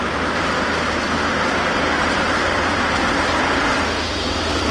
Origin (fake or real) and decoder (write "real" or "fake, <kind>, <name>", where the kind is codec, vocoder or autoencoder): fake, vocoder, BigVGAN v2